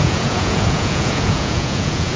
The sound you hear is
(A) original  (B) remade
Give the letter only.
B